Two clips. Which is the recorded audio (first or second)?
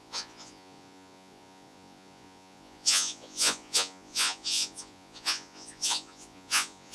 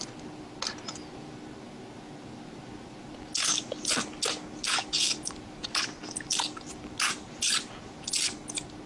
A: second